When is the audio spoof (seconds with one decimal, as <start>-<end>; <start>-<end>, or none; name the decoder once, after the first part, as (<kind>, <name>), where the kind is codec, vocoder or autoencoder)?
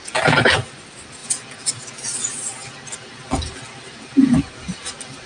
none